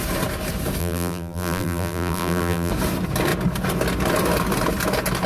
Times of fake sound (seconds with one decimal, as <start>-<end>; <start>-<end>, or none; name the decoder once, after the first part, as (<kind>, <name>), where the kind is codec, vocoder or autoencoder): 0.8-2.7 (vocoder, BigVGAN v2)